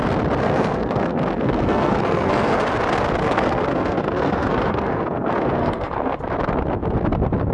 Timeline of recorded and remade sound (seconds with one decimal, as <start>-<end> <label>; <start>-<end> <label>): 0.0-0.4 recorded; 0.4-2.6 remade; 2.6-3.2 recorded; 3.2-6.2 remade; 6.2-7.5 recorded